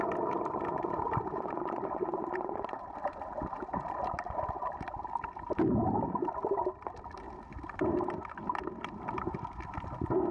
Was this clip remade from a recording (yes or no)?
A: yes